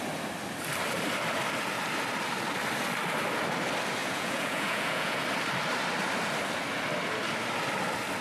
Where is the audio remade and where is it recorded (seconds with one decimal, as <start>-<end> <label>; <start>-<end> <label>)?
0.0-4.0 recorded; 4.0-5.2 remade; 5.2-8.2 recorded